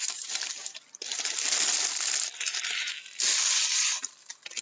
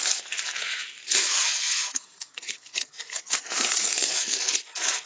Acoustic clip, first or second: first